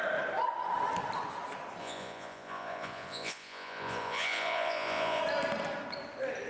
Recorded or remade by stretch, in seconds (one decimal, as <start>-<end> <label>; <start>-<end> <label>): 0.0-1.8 recorded; 1.8-5.2 remade; 5.2-6.5 recorded